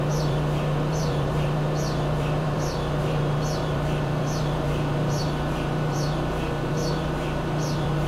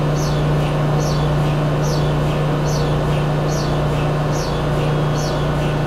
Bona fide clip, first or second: second